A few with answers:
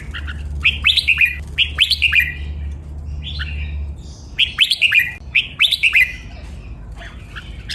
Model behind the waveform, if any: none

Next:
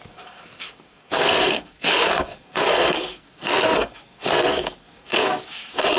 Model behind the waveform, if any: codec, SNAC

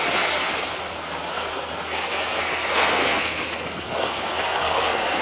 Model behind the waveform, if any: codec, SNAC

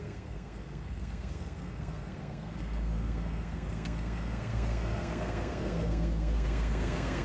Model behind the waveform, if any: codec, SNAC